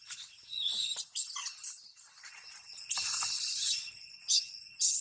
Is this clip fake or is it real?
real